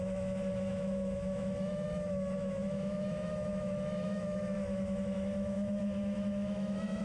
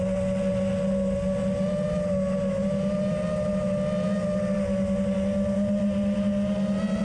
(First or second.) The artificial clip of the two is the first